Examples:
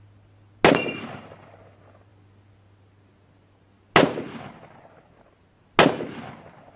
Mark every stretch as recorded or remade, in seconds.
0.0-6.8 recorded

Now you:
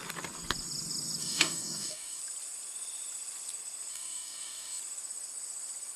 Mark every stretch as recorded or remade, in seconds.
0.0-1.2 recorded; 1.2-2.2 remade; 2.2-3.9 recorded; 3.9-4.8 remade; 4.8-6.0 recorded